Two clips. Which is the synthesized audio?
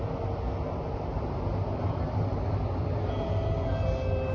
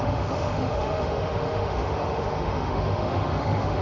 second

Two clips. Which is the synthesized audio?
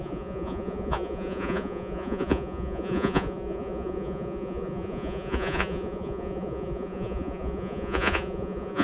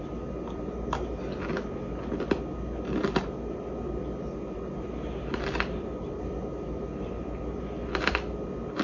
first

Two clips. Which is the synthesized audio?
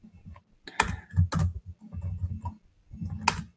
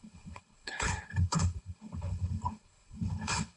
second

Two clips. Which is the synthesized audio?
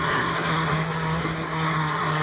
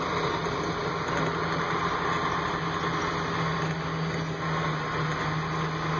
first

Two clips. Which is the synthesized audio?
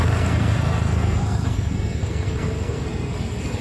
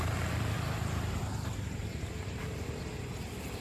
first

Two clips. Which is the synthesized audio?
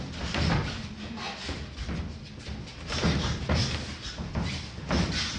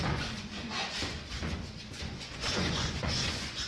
second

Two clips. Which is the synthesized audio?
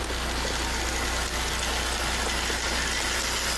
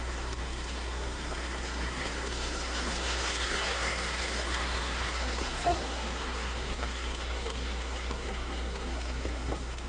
second